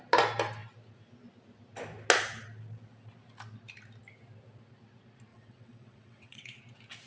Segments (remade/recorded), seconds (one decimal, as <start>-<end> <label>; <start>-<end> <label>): 0.0-5.3 recorded; 5.3-6.6 remade; 6.6-7.1 recorded